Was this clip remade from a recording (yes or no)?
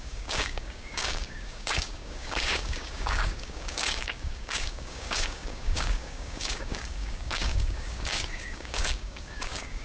yes